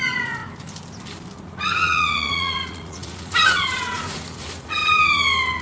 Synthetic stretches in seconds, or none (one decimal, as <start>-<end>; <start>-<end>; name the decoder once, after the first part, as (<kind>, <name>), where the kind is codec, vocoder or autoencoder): 0.0-0.4 (vocoder, Vocos); 1.4-4.8